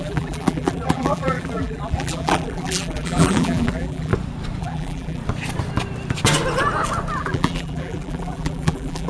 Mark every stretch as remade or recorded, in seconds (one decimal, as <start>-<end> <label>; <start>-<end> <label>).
0.0-4.1 remade; 4.1-4.6 recorded; 4.6-5.2 remade; 5.2-7.2 recorded; 7.2-9.1 remade